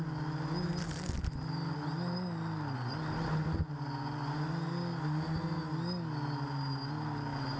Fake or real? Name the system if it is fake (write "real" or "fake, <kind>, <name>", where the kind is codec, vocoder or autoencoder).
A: real